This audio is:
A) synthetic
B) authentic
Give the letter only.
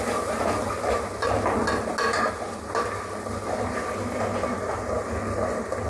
B